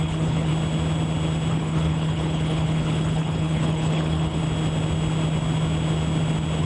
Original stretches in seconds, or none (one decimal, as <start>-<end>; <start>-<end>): 0.5-1.5; 4.4-6.6